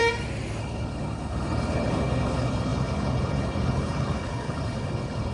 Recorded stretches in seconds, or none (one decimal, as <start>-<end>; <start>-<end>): 0.0-0.6